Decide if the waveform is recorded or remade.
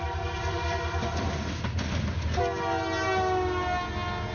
recorded